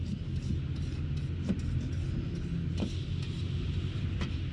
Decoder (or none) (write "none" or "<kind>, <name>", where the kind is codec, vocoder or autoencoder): none